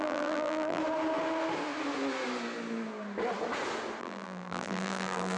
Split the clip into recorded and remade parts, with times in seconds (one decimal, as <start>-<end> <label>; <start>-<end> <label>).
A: 0.0-0.8 remade; 0.8-4.0 recorded; 4.0-5.4 remade